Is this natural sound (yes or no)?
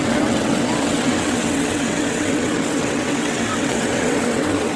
no